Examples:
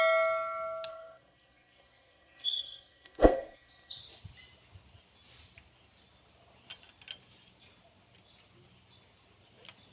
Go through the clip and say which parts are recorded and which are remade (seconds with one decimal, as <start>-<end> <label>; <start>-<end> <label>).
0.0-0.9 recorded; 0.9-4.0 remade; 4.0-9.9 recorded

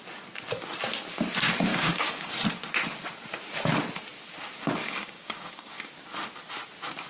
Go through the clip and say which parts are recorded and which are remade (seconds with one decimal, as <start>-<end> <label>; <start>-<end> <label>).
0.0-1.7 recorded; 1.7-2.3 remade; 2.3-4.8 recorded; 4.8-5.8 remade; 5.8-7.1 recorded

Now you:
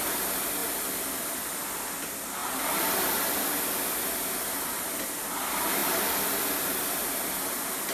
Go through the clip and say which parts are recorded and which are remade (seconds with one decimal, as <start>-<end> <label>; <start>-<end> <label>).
0.0-7.9 recorded

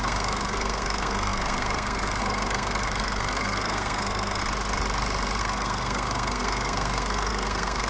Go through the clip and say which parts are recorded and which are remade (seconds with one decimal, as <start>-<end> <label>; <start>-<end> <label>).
0.0-4.4 remade; 4.4-5.4 recorded; 5.4-7.9 remade

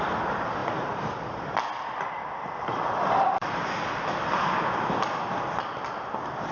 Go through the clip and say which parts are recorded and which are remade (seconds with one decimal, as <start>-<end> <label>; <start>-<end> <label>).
0.0-0.6 recorded; 0.6-4.5 remade; 4.5-6.5 recorded

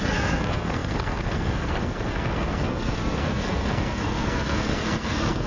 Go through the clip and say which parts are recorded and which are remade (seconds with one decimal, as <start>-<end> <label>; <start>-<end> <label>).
0.0-5.5 remade

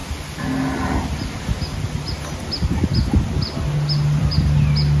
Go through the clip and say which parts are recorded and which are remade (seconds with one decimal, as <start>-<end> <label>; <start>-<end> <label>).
0.0-5.0 recorded

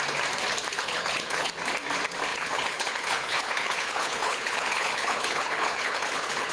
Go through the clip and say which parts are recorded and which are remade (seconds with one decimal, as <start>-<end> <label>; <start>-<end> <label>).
0.0-0.7 recorded; 0.7-1.5 remade; 1.5-2.3 recorded; 2.3-6.5 remade